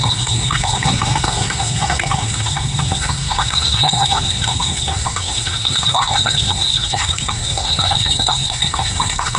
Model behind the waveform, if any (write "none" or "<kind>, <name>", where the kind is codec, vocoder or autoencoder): codec, SNAC